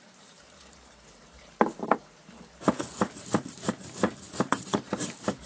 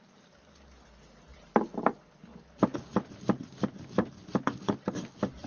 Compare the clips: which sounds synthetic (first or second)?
first